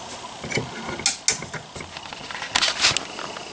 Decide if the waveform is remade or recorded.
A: recorded